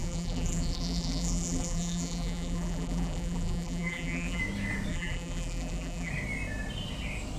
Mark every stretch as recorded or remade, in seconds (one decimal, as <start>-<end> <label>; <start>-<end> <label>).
0.0-4.4 remade; 4.4-4.9 recorded; 4.9-6.1 remade; 6.1-7.4 recorded